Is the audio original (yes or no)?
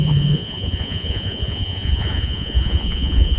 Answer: no